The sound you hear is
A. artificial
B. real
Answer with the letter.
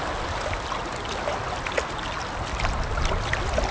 B